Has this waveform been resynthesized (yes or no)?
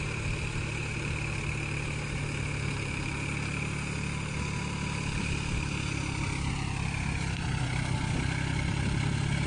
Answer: no